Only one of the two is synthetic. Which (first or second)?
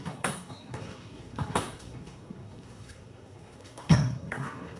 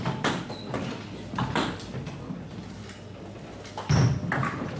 first